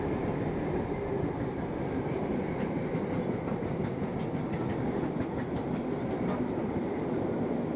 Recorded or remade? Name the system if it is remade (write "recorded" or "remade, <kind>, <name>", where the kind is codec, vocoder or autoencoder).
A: recorded